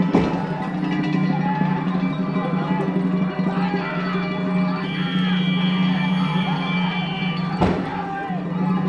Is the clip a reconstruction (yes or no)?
no